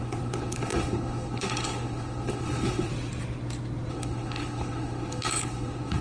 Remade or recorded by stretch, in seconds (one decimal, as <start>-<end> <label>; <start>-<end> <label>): 0.0-2.9 remade; 2.9-3.9 recorded; 3.9-6.0 remade